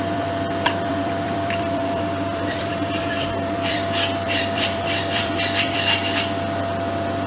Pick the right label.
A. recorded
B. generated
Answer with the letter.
B